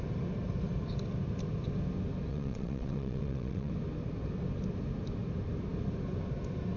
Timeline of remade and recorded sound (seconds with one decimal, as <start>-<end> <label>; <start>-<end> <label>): 0.0-2.3 recorded; 2.3-3.7 remade; 3.7-6.8 recorded